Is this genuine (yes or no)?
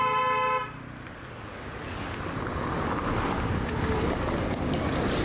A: yes